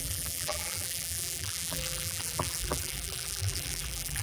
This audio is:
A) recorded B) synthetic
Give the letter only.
B